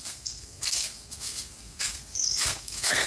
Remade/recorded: remade